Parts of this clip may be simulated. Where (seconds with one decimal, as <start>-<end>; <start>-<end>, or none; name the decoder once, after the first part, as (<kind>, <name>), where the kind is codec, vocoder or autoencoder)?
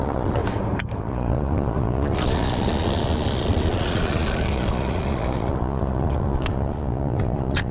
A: 0.0-0.4 (vocoder, Vocos); 1.0-7.7